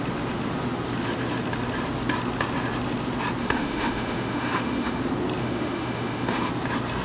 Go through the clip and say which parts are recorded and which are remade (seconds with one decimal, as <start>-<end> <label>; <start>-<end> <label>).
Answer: 0.0-3.4 recorded; 3.4-5.0 remade; 5.0-5.4 recorded; 5.4-6.5 remade; 6.5-7.0 recorded